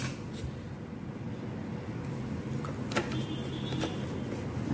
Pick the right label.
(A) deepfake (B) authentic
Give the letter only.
B